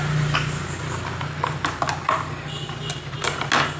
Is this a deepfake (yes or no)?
no